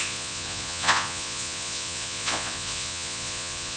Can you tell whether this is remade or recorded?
remade